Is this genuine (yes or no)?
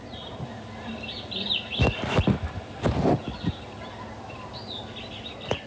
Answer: yes